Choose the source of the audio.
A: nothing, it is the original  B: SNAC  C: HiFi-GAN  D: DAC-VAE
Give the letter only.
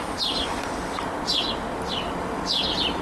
A